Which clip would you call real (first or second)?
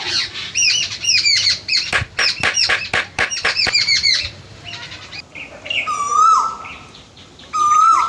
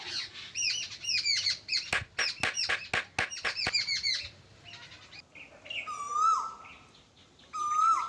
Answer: second